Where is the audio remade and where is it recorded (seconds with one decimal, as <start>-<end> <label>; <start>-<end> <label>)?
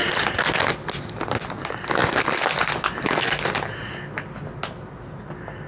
0.0-5.7 recorded